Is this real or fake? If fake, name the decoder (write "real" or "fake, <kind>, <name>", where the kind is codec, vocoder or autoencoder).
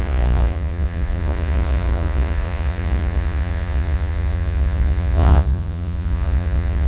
fake, vocoder, Vocos